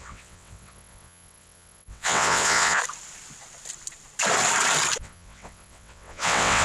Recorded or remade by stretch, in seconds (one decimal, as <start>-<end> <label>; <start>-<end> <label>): 0.0-2.8 remade; 2.8-5.0 recorded; 5.0-6.6 remade